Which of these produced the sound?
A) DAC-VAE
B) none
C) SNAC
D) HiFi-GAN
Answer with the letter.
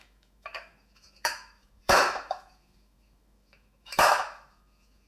A